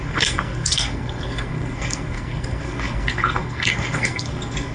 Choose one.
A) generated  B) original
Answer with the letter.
A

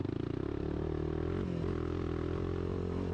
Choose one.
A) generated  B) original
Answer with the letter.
B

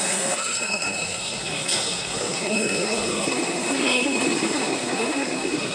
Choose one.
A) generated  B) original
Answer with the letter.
A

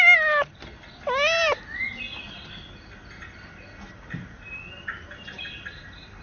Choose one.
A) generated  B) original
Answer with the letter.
B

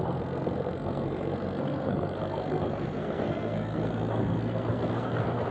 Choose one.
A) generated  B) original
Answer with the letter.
A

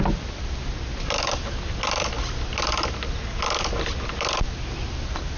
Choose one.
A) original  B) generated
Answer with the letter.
A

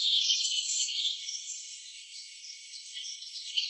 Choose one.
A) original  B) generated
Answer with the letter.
B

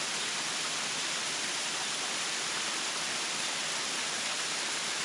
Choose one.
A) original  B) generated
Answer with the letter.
A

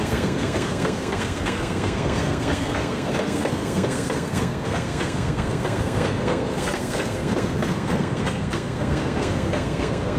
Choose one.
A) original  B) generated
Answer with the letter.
B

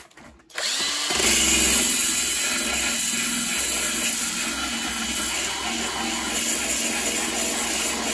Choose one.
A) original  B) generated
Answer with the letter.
A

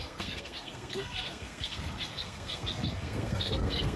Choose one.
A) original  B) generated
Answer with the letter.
B